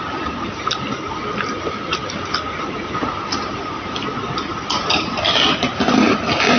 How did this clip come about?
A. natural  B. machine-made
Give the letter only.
A